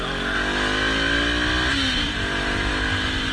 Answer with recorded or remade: recorded